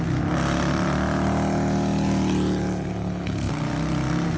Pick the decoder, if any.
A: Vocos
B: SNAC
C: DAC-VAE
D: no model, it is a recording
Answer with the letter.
D